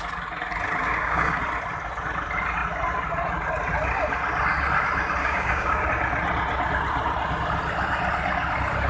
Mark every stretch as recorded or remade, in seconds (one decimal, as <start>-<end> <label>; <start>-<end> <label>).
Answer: 0.0-0.8 recorded; 0.8-1.4 remade; 1.4-5.2 recorded; 5.2-5.8 remade; 5.8-8.9 recorded